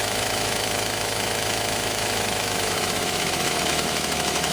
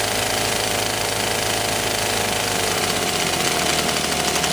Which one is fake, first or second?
first